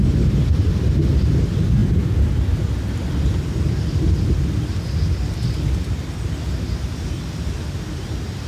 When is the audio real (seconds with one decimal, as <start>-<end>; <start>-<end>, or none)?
0.0-8.5